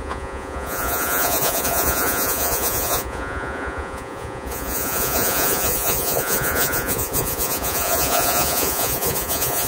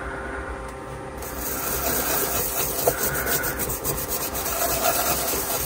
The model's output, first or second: first